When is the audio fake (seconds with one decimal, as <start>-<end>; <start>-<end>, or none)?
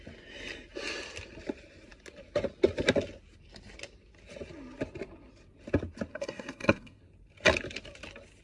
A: 6.1-7.0